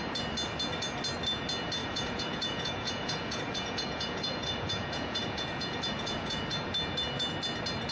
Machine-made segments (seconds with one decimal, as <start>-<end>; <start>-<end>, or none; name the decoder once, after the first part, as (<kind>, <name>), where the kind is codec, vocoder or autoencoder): 1.8-6.4 (vocoder, Vocos)